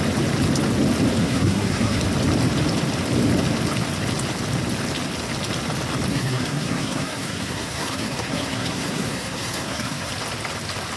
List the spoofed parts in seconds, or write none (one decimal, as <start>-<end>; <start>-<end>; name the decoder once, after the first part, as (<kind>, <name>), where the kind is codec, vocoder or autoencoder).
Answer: 1.2-2.0 (codec, SNAC); 6.1-10.1